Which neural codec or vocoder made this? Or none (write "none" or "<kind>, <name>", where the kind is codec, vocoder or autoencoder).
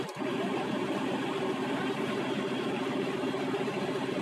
vocoder, BigVGAN v2